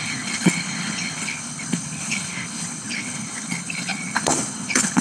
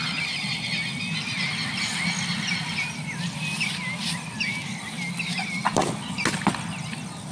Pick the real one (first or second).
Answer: second